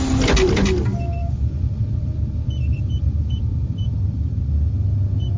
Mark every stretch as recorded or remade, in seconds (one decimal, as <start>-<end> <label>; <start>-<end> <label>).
0.0-1.2 recorded; 1.2-4.4 remade; 4.4-5.4 recorded